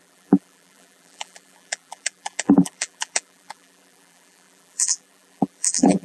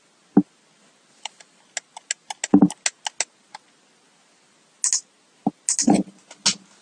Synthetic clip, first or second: first